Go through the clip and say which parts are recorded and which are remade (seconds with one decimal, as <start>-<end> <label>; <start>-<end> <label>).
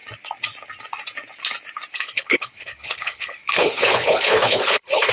0.0-1.9 recorded; 1.9-5.1 remade